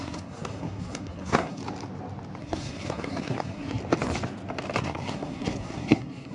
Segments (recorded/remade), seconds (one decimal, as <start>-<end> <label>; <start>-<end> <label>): 0.0-1.6 remade; 1.6-2.4 recorded; 2.4-3.8 remade; 3.8-4.8 recorded; 4.8-6.3 remade

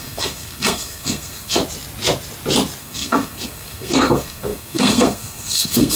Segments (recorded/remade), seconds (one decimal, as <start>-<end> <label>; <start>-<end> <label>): 0.0-1.6 remade; 1.6-2.8 recorded; 2.8-6.0 remade

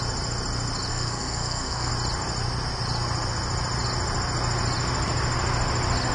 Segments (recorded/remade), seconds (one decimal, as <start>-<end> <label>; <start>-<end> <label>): 0.0-0.9 recorded; 0.9-1.9 remade; 1.9-6.1 recorded

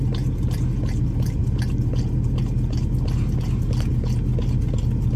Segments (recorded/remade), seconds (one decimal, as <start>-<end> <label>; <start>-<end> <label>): 0.0-5.2 recorded